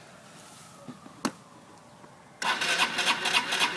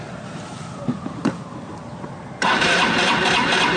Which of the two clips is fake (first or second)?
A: second